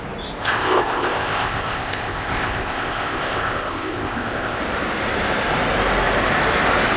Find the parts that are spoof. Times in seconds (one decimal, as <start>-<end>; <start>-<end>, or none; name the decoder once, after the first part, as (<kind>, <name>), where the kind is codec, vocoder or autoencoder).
0.4-4.6 (codec, ZipCodec)